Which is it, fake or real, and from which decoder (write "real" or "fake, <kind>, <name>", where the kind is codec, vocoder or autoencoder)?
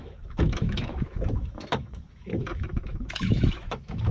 fake, autoencoder, DAC-VAE